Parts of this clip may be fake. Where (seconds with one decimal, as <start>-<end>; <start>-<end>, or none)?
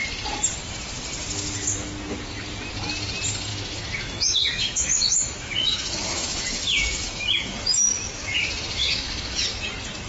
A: 3.5-8.4; 8.8-9.7